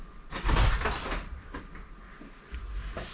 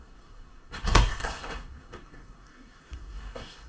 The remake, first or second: second